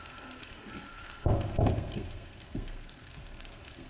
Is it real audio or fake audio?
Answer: fake